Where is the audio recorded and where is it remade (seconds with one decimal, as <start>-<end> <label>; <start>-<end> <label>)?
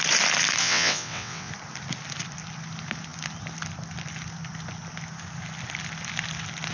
0.0-0.6 recorded; 0.6-1.5 remade; 1.5-6.7 recorded